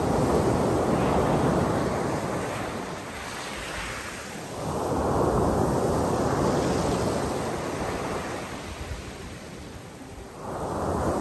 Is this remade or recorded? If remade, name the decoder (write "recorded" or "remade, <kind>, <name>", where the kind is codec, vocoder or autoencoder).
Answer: recorded